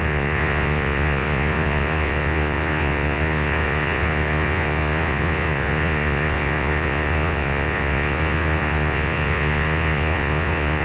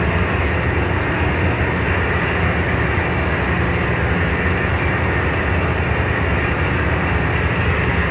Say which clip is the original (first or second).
second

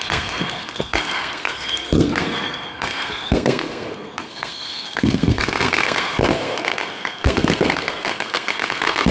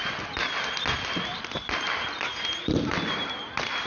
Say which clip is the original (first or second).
second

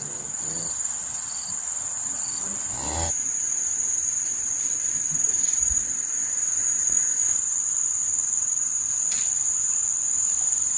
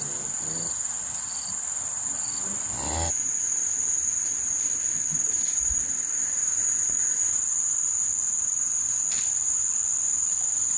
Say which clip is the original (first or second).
second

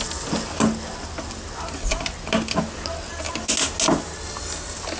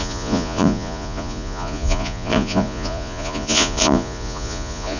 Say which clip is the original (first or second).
first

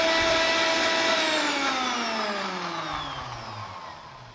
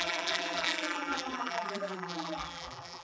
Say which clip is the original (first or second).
first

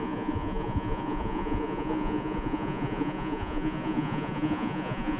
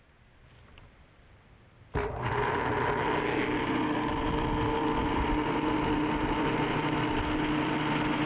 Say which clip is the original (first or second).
second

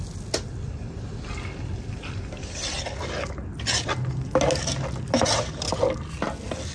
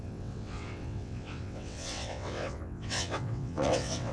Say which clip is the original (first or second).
first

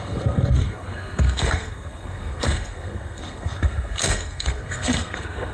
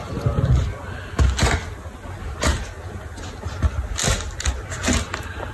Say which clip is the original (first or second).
second